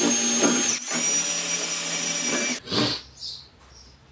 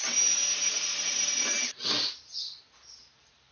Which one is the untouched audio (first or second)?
first